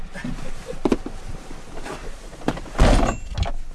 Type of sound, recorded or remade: recorded